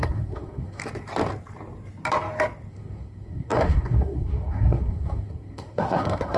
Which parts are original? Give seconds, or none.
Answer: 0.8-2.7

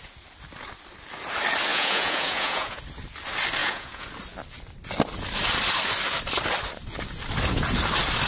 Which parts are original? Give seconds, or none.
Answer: 0.0-1.7; 2.8-3.6; 4.1-8.3

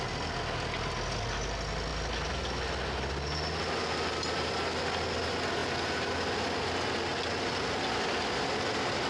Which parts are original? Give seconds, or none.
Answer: 0.0-9.1